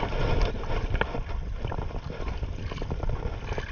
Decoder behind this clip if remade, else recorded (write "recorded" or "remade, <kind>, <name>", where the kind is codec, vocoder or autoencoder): recorded